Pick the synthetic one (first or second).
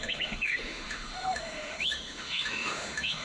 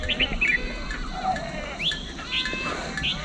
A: first